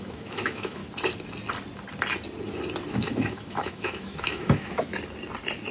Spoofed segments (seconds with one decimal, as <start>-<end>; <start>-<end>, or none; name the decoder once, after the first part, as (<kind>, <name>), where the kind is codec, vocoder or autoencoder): 0.0-0.8 (autoencoder, DAC-VAE); 2.9-4.9